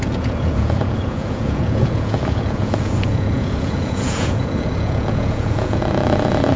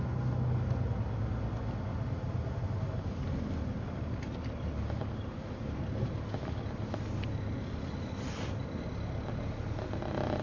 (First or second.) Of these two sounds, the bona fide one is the second